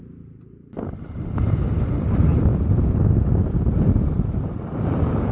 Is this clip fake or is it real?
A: real